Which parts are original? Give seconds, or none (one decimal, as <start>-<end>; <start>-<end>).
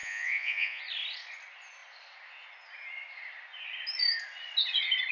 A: 0.8-5.1